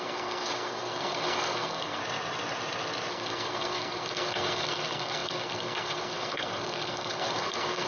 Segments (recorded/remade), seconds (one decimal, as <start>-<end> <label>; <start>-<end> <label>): 0.0-2.0 remade; 2.0-3.1 recorded; 3.1-7.9 remade